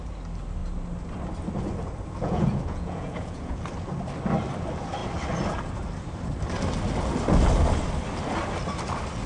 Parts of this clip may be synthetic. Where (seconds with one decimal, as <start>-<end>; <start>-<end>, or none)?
2.2-3.6